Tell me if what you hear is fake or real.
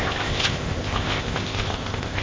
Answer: fake